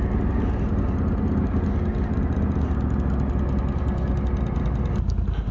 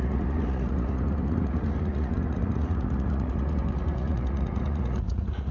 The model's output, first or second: second